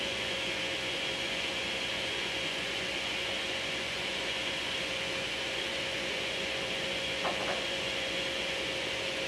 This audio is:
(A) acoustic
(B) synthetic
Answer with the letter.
B